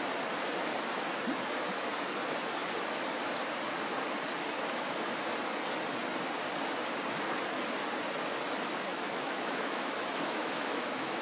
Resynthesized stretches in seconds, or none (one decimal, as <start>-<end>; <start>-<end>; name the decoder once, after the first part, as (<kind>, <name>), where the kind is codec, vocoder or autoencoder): 8.9-11.2 (autoencoder, DAC-VAE)